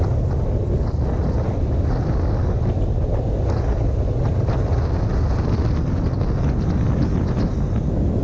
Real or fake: fake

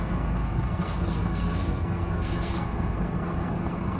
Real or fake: fake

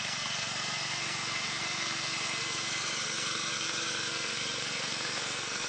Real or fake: fake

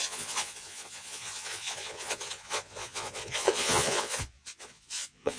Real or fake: fake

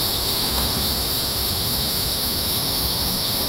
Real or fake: fake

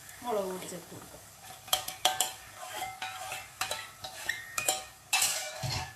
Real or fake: fake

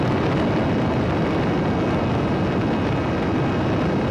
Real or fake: real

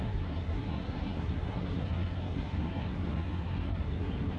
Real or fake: fake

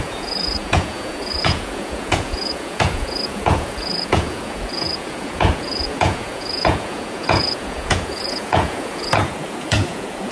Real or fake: fake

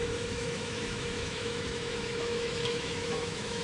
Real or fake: fake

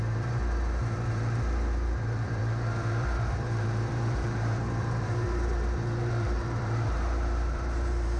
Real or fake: fake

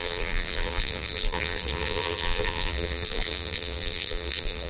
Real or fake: fake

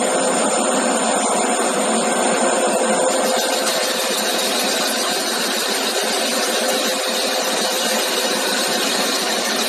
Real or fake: real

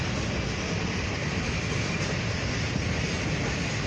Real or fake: real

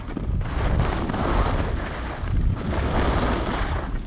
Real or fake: real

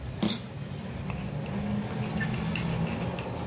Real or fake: real